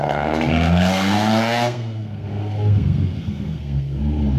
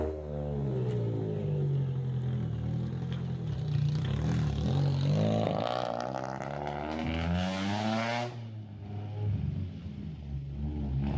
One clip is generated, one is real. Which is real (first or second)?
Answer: second